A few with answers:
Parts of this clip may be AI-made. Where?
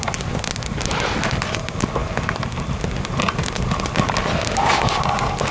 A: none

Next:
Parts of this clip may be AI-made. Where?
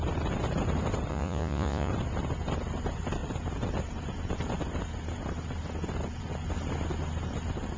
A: 1.1-1.9 (vocoder, Vocos)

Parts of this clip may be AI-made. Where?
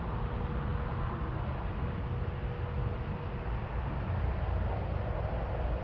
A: none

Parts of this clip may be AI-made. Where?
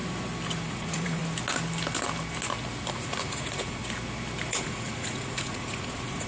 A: 0.7-1.2 (vocoder, Vocos); 2.9-3.8; 4.5-6.3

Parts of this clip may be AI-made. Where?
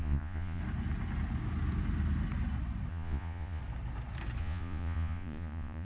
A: 0.0-0.6 (vocoder, Vocos); 2.9-3.6; 4.4-5.8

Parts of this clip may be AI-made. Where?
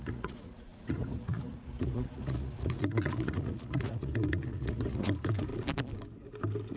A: 0.0-5.5 (vocoder, Vocos)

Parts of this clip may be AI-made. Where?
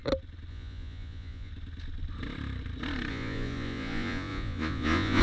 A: 0.5-1.5 (vocoder, Vocos); 3.1-5.2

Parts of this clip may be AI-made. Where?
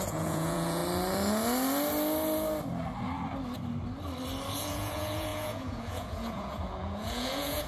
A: 0.0-0.8 (vocoder, Vocos); 4.6-7.7